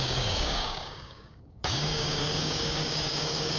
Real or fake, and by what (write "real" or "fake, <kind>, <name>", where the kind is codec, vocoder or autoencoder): fake, codec, DAC